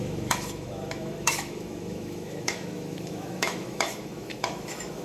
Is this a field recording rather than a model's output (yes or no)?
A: no